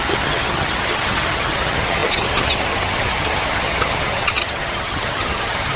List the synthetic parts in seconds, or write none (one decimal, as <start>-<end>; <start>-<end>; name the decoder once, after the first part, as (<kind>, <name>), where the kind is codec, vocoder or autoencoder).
0.0-5.8 (vocoder, HiFi-GAN)